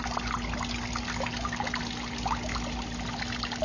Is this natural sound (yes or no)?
yes